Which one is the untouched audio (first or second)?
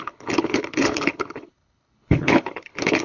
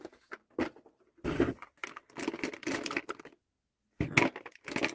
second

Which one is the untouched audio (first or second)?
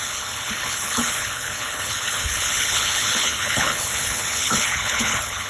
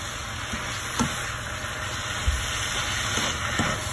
second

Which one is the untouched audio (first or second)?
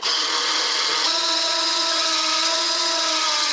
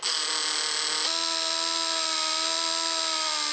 second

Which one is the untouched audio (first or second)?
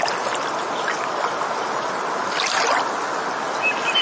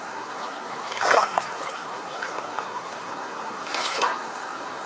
first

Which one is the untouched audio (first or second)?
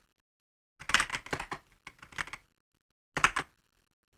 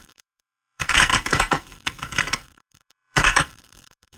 first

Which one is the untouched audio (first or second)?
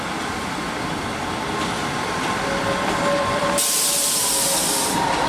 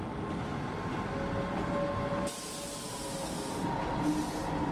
second